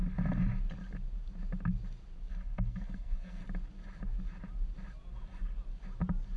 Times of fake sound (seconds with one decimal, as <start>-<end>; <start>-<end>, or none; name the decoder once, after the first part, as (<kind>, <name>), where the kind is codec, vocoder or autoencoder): 2.3-3.4 (codec, SNAC)